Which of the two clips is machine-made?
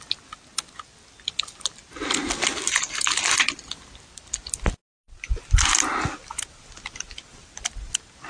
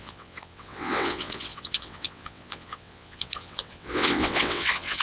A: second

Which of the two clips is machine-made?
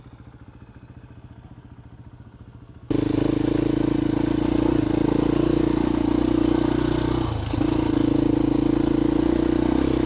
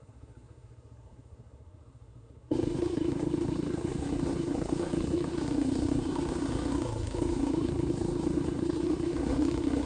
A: second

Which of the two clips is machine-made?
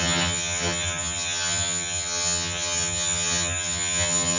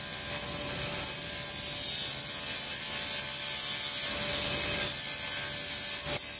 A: first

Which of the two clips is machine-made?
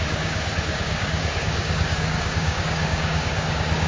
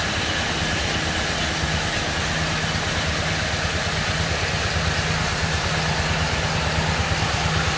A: first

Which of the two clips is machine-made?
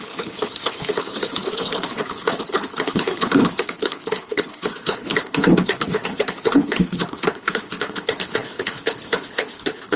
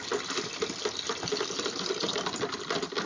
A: first